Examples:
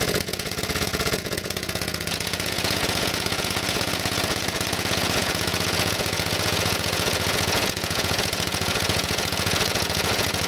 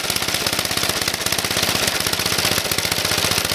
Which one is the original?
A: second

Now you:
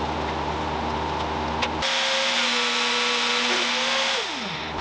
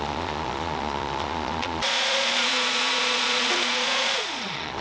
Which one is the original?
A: first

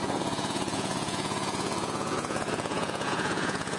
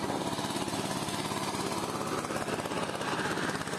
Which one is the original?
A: second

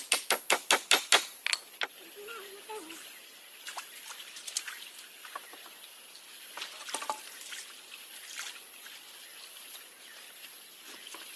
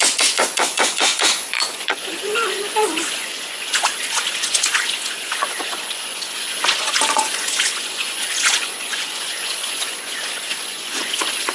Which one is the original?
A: first